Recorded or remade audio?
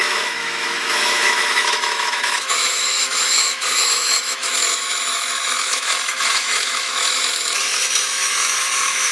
remade